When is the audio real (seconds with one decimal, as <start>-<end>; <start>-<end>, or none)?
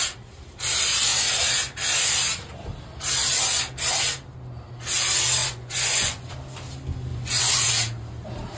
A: 0.0-5.4; 6.3-7.1; 7.7-8.6